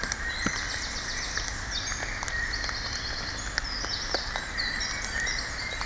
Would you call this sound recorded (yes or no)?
yes